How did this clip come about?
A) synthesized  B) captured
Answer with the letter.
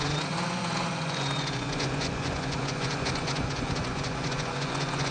A